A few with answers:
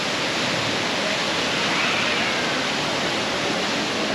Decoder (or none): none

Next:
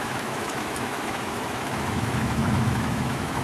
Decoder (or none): autoencoder, DAC-VAE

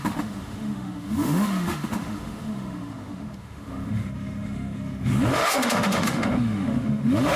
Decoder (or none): autoencoder, DAC-VAE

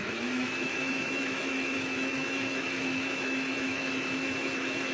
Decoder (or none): autoencoder, DAC-VAE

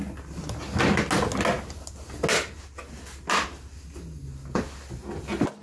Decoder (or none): none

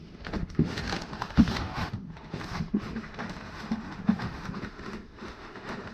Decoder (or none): autoencoder, DAC-VAE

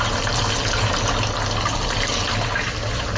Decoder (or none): none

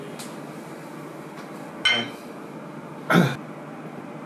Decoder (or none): none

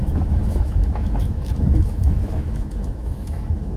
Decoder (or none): autoencoder, DAC-VAE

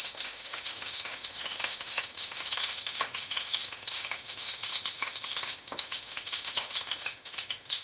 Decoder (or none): autoencoder, DAC-VAE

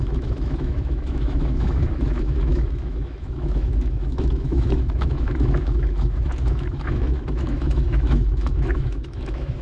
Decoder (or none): autoencoder, DAC-VAE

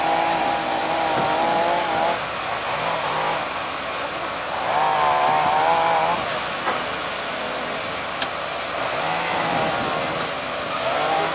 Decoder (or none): none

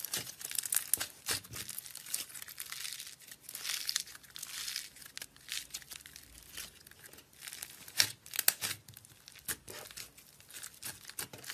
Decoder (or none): none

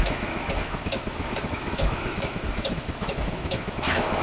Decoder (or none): autoencoder, DAC-VAE